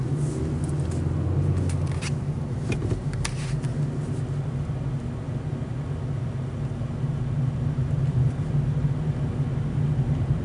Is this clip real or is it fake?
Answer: real